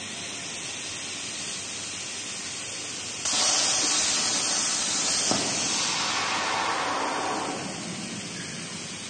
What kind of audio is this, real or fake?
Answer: real